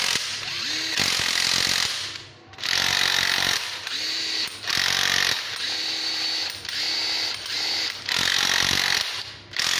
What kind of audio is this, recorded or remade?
recorded